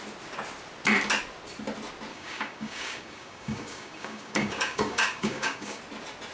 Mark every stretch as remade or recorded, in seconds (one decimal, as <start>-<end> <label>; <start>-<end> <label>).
0.0-2.1 recorded; 2.1-5.8 remade; 5.8-6.3 recorded